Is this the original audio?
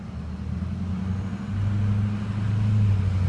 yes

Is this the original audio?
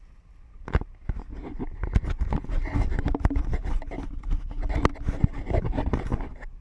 yes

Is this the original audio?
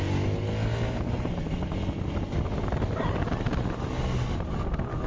yes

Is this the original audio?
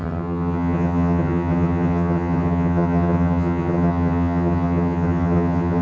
no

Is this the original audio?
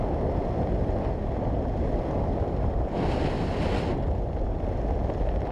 yes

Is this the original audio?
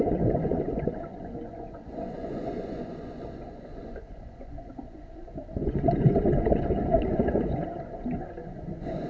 no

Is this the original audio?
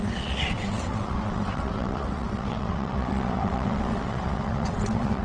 no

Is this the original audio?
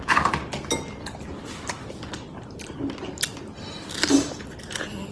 yes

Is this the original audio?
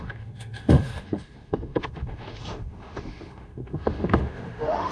no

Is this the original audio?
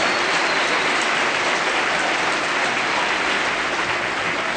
yes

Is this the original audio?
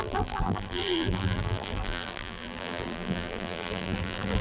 no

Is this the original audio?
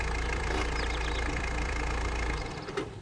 no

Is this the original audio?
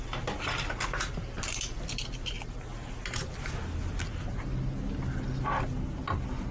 yes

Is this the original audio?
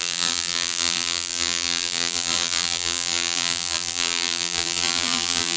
no